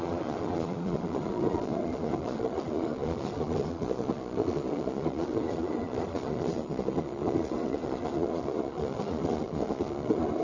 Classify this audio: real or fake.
fake